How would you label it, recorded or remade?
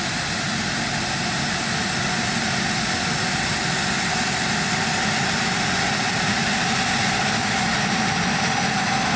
recorded